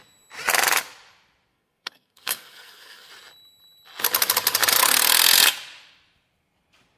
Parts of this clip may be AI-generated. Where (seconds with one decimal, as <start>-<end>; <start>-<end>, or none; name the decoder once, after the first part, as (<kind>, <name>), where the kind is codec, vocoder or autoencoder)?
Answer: 1.5-3.1 (codec, SNAC)